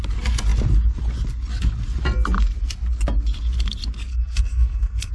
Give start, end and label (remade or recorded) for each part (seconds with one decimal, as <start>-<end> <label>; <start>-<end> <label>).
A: 0.0-4.1 recorded; 4.1-5.1 remade